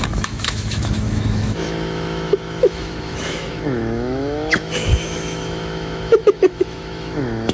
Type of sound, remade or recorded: remade